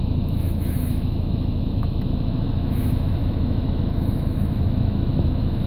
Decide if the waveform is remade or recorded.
remade